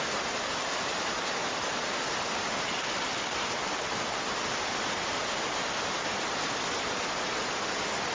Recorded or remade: remade